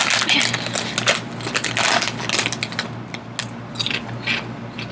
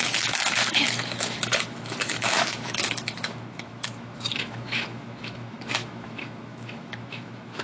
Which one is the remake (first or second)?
second